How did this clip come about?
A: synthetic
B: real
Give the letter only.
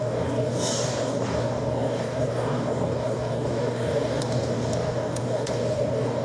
A